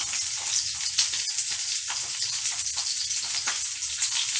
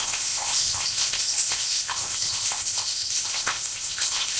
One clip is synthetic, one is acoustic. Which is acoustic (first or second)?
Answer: first